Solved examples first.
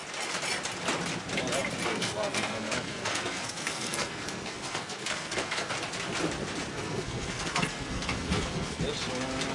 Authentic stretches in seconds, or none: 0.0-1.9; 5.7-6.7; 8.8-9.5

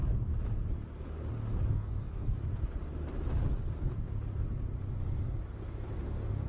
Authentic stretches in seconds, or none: 0.0-1.7; 2.4-6.5

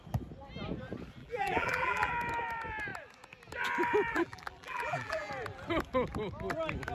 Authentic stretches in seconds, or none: 0.0-1.2; 2.1-4.1; 5.3-6.9